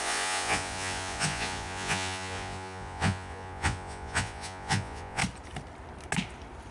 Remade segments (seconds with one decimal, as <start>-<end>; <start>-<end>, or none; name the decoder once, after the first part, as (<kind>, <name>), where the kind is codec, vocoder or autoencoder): 0.0-5.2 (vocoder, Vocos)